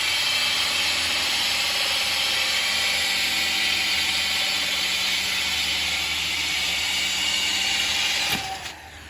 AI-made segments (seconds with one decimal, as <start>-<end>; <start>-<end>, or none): none